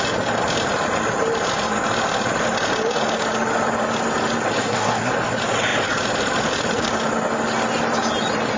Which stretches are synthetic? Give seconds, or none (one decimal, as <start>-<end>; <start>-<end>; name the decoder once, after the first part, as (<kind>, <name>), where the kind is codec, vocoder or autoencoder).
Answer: 4.6-5.1 (codec, SNAC)